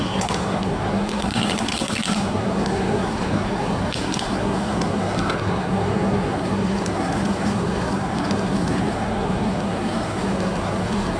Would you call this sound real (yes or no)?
no